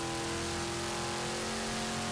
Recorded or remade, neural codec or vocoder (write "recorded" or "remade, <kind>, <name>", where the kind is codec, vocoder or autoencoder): recorded